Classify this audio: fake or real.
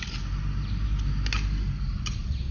real